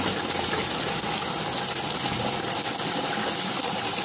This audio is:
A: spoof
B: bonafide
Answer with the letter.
B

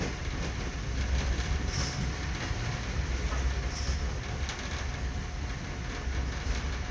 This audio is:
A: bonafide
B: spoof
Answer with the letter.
A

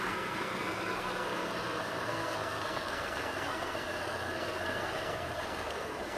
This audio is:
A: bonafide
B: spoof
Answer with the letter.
B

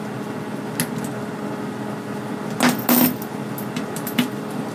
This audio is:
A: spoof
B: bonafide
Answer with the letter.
B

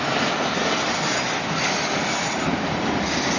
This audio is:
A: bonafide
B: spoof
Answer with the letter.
A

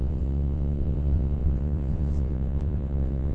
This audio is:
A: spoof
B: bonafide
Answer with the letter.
A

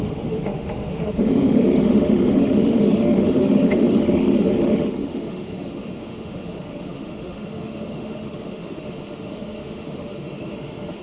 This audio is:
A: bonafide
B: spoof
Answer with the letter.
B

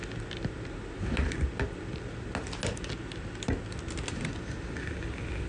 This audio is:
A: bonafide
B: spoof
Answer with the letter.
A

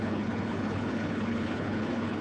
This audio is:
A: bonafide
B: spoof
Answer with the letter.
B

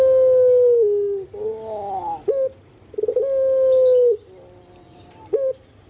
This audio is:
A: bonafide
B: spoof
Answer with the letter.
A